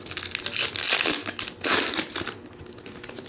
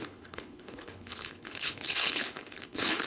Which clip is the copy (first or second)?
second